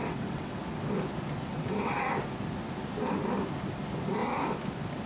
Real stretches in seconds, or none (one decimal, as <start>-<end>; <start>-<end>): 0.6-1.5; 2.1-5.1